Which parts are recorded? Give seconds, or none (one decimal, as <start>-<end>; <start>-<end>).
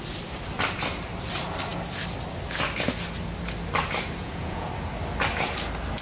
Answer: 0.0-4.2; 4.7-6.0